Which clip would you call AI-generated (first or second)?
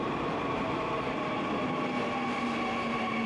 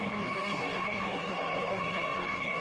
second